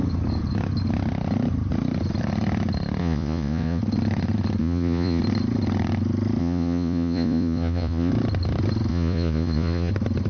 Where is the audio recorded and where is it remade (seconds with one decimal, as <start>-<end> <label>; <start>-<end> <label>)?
0.0-3.0 recorded; 3.0-3.8 remade; 3.8-4.6 recorded; 4.6-5.2 remade; 5.2-6.4 recorded; 6.4-8.1 remade; 8.1-8.9 recorded; 8.9-9.9 remade; 9.9-10.3 recorded